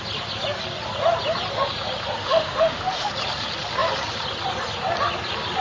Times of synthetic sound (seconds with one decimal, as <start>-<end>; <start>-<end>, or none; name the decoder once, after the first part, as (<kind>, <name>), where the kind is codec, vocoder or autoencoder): 2.2-3.1 (autoencoder, DAC-VAE)